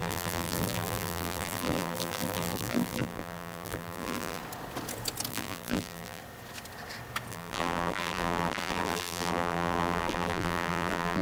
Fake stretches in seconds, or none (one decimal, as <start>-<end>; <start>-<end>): 0.0-4.4; 5.3-6.2; 7.3-11.2